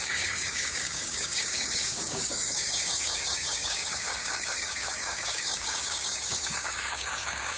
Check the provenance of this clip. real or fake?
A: fake